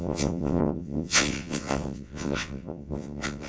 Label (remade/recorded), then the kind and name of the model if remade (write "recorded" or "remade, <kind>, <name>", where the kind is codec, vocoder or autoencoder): remade, vocoder, WaveNeXt